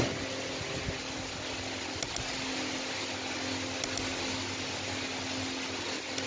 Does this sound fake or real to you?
real